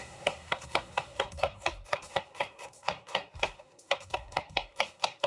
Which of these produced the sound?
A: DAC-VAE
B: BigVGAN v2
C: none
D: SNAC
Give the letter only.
D